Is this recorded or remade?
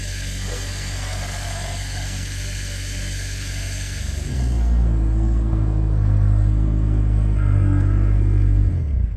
remade